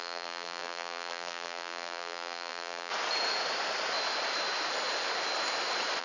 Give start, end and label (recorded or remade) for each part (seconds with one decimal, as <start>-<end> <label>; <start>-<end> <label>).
0.0-2.9 remade; 2.9-6.0 recorded